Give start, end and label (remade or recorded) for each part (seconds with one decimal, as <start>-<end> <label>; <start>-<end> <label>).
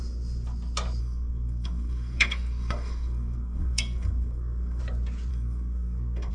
0.0-1.0 recorded; 1.0-4.8 remade; 4.8-5.3 recorded; 5.3-6.3 remade